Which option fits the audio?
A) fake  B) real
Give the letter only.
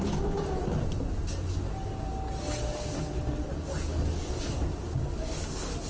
B